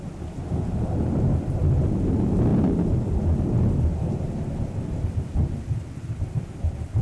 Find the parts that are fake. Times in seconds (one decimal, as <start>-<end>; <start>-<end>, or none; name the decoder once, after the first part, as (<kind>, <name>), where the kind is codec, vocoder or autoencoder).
none